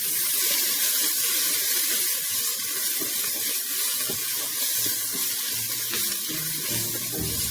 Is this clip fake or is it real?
real